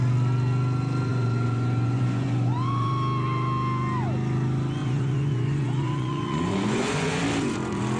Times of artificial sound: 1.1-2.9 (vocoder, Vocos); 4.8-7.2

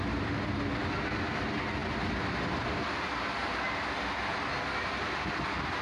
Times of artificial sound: none

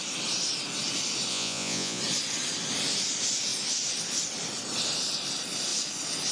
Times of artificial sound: 1.3-2.0 (vocoder, Vocos)

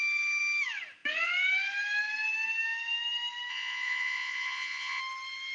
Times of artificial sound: 3.5-5.0 (vocoder, Vocos)

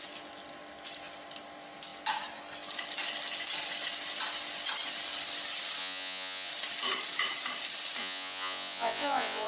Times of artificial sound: 5.8-6.5 (vocoder, Vocos); 8.0-9.5

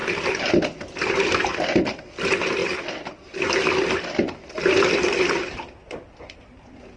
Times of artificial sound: none

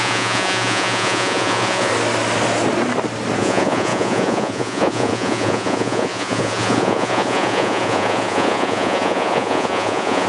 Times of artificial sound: 0.0-1.9 (vocoder, Vocos); 3.4-10.3